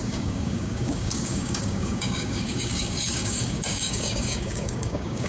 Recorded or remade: remade